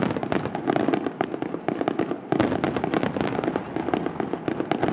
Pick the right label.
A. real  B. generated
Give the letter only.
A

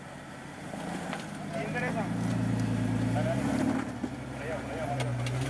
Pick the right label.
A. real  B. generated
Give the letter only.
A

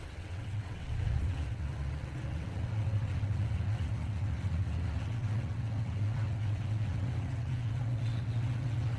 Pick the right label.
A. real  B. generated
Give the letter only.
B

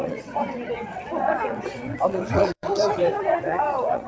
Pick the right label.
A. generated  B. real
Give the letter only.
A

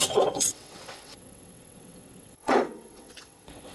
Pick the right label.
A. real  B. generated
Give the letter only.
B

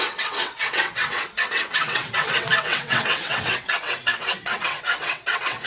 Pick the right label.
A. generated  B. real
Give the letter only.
A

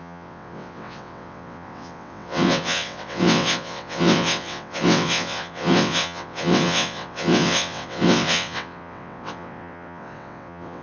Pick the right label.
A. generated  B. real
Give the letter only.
A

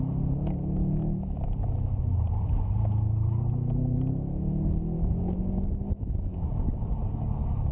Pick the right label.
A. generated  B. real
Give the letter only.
B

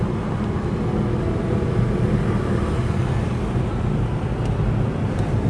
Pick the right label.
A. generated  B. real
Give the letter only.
B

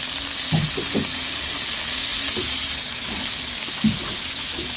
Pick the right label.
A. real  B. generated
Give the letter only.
A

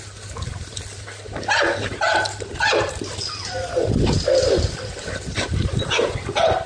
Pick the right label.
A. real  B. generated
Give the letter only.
A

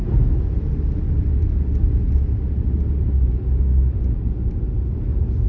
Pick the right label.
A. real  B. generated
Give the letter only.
A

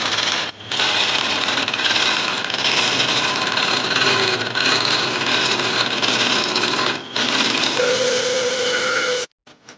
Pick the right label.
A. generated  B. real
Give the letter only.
B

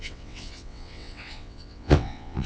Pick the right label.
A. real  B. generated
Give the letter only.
B